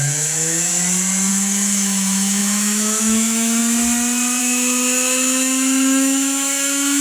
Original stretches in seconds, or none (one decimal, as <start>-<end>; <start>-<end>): 0.7-1.3; 3.6-4.4